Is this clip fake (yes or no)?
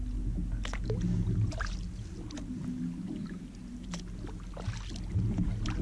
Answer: no